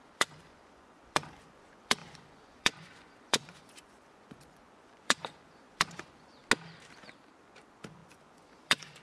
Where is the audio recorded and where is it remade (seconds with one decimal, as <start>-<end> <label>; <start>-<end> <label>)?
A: 0.0-6.4 remade; 6.4-7.4 recorded; 7.4-9.0 remade